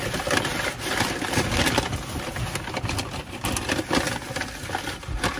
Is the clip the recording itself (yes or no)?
yes